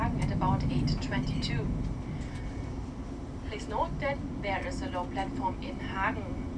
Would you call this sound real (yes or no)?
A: yes